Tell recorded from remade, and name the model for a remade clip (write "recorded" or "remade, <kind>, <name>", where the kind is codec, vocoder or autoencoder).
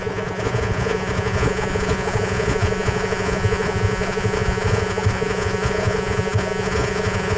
remade, vocoder, Vocos